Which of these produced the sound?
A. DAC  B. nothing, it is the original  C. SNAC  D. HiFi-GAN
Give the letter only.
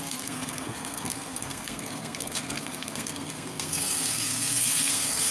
C